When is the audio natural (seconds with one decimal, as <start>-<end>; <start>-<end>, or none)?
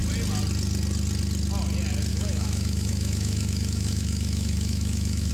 0.0-2.1